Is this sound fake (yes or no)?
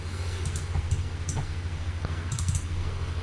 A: yes